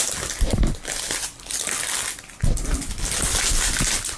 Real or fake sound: fake